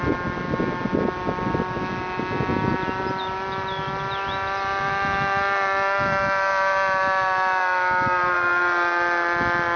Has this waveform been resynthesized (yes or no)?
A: no